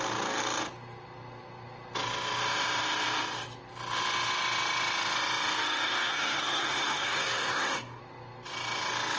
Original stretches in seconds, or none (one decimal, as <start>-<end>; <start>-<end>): 0.0-6.1; 8.0-9.2